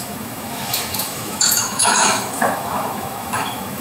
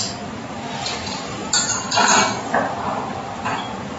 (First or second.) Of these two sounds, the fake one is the first